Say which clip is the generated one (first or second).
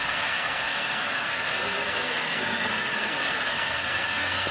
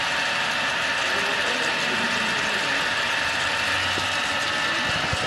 first